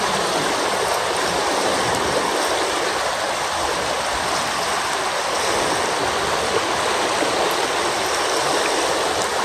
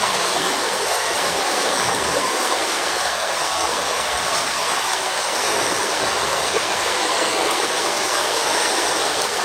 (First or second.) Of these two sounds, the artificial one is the second